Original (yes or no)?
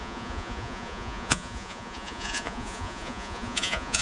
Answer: no